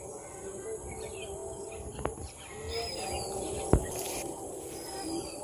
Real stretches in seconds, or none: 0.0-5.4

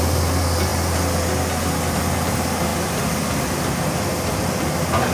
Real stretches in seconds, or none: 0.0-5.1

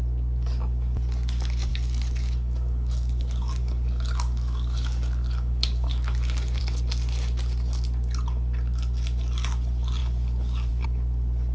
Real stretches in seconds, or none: 0.0-1.7; 6.6-11.5

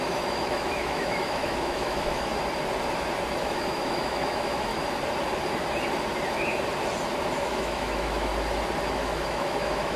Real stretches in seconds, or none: 2.3-3.4; 4.7-7.4; 8.3-8.9

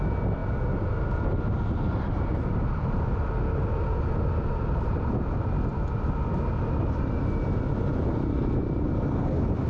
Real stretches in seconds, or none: 0.0-9.7

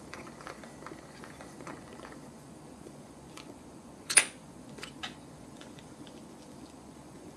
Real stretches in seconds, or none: 0.6-1.1